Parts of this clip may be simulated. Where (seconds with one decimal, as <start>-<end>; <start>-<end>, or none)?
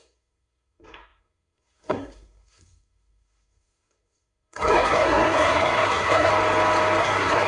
0.0-6.3; 7.0-7.5